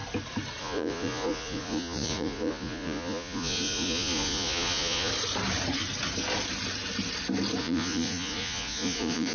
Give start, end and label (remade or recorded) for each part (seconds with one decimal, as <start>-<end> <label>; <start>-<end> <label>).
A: 0.0-0.6 recorded; 0.6-5.1 remade; 5.1-7.6 recorded; 7.6-9.3 remade